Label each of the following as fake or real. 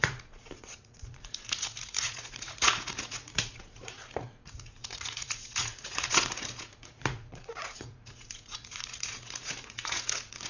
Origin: fake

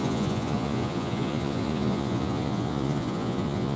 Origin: fake